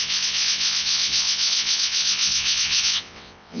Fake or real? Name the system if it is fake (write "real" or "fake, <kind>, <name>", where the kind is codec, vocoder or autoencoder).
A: fake, vocoder, WaveNeXt